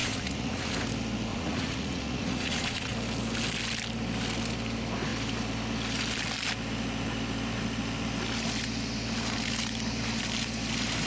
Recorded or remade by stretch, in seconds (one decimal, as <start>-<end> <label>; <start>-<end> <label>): 0.0-0.7 remade; 0.7-1.3 recorded; 1.3-2.9 remade; 2.9-11.1 recorded